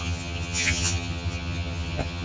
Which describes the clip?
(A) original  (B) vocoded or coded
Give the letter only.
B